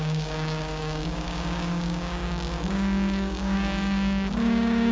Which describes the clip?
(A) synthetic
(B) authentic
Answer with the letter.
A